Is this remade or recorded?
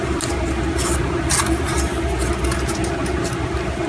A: recorded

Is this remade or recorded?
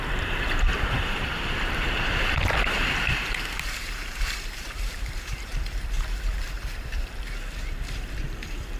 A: remade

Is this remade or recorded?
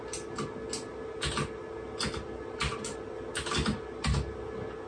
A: recorded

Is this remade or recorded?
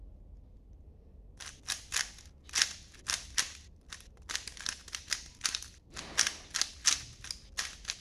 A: recorded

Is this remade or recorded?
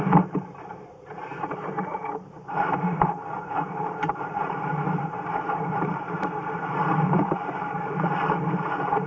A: remade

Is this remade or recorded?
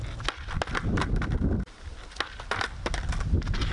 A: recorded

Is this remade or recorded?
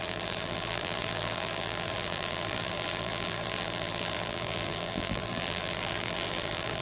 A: remade